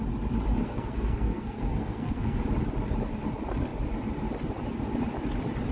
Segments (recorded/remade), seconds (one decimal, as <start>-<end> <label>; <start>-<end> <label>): 0.0-0.5 recorded; 0.5-2.4 remade; 2.4-5.7 recorded